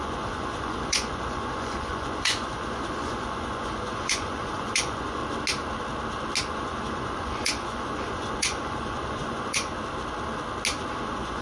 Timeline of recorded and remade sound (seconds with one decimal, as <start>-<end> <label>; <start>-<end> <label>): 0.0-5.2 remade; 5.2-6.5 recorded; 6.5-9.7 remade; 9.7-11.0 recorded; 11.0-11.4 remade